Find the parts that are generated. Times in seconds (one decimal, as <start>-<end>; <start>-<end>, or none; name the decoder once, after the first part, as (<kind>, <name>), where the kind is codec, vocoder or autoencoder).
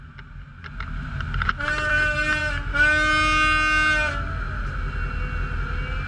none